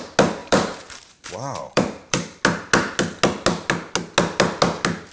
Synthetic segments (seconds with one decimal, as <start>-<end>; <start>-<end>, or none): 0.4-2.4